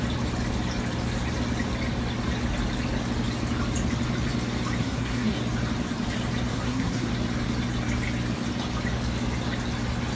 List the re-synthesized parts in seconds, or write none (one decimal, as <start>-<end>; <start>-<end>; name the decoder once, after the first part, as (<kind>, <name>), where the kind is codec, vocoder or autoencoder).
4.8-5.4 (codec, SNAC); 6.5-7.1